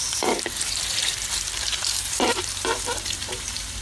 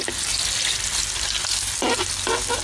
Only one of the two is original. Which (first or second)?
second